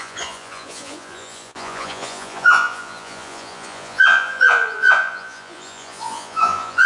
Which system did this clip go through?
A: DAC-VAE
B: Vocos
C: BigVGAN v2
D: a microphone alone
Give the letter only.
B